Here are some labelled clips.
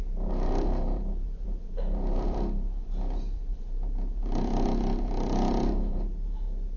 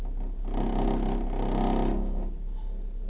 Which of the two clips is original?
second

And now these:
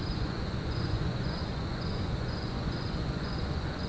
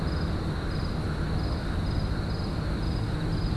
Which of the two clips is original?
second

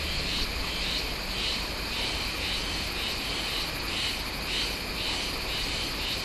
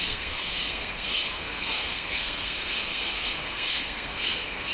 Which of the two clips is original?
first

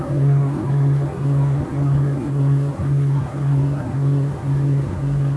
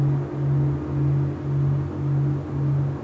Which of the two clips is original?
second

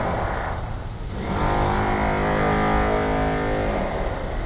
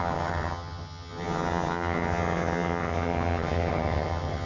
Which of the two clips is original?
first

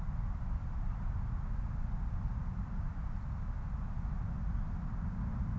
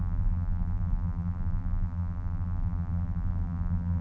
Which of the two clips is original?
first